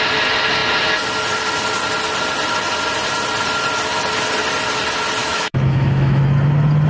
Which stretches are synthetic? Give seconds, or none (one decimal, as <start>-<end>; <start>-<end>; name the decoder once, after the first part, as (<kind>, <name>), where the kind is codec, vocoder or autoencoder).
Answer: 5.2-6.2 (autoencoder, DAC-VAE)